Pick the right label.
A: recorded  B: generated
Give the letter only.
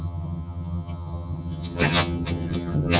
B